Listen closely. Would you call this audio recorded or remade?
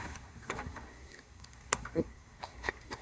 remade